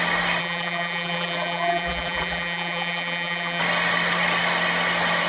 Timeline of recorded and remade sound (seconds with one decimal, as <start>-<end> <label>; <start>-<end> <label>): 0.0-0.4 recorded; 0.4-3.6 remade; 3.6-5.3 recorded